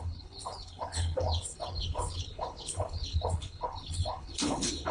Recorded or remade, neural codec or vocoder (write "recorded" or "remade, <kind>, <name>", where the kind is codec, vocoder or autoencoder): remade, codec, HILCodec